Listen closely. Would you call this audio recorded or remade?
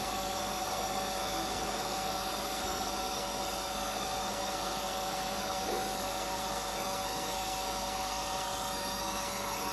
remade